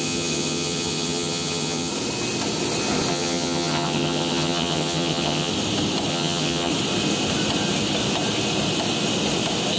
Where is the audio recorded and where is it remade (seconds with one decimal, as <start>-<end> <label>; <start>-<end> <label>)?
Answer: 0.0-1.9 remade; 1.9-3.1 recorded; 3.1-5.5 remade; 5.5-6.1 recorded; 6.1-6.7 remade; 6.7-9.8 recorded